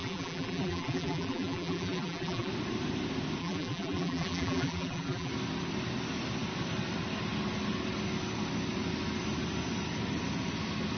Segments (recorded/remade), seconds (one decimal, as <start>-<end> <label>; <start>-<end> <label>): 0.0-2.5 remade; 2.5-3.4 recorded; 3.4-5.3 remade; 5.3-11.0 recorded